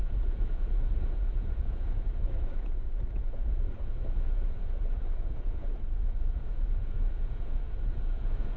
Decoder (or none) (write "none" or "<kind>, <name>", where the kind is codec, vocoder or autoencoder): vocoder, Vocos